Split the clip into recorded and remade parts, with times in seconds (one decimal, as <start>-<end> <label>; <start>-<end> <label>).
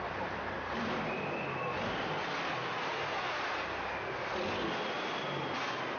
0.0-6.0 recorded